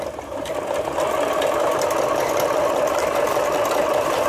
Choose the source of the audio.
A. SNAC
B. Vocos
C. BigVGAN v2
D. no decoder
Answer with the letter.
D